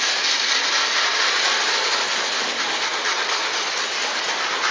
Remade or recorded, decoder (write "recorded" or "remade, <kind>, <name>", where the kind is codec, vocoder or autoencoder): recorded